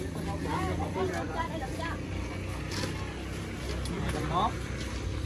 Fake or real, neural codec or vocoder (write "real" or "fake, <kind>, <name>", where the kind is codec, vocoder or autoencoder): real